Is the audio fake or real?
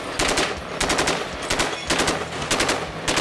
real